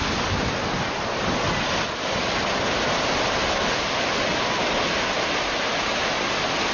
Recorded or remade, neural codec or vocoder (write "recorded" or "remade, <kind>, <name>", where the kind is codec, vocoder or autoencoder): recorded